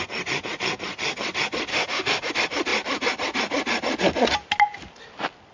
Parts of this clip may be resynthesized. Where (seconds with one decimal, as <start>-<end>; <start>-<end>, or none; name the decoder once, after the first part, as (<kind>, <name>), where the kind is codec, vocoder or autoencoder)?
1.7-2.3 (autoencoder, DAC-VAE)